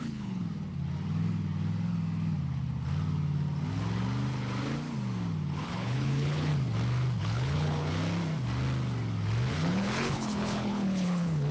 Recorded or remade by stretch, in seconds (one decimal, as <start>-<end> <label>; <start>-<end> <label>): 0.0-0.4 remade; 0.4-5.6 recorded; 5.6-6.5 remade; 6.5-7.2 recorded; 7.2-8.0 remade; 8.0-9.5 recorded; 9.5-11.5 remade